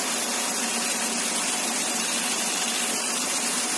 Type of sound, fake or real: real